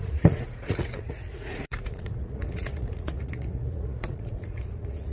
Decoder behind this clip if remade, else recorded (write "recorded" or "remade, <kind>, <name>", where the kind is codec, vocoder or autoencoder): remade, vocoder, Vocos